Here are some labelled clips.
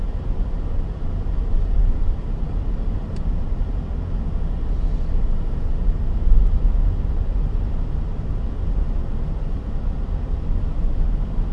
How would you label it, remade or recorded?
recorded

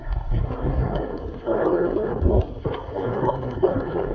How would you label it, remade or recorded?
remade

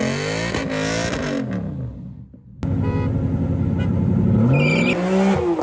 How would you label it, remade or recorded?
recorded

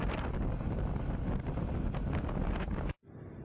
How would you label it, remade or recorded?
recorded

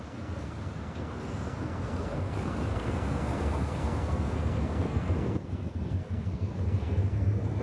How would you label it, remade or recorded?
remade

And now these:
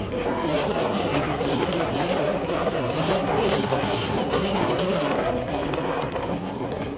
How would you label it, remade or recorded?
remade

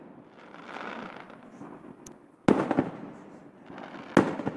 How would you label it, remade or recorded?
recorded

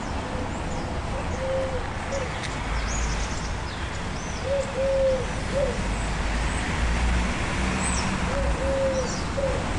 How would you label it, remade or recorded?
recorded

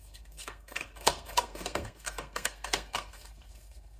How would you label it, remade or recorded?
remade